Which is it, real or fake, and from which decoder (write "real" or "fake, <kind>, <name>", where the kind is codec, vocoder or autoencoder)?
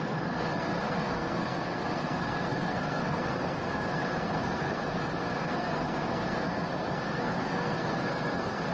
fake, codec, SNAC